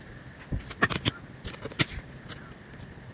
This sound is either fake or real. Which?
real